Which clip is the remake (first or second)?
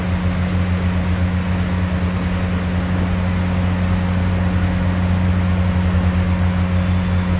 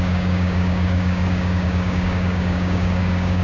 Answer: second